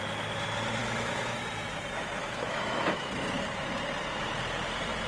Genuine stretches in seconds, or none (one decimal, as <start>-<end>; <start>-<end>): 0.0-0.8; 1.4-2.2; 3.1-5.1